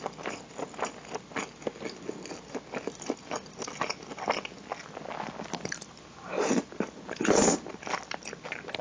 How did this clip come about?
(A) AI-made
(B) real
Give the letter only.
B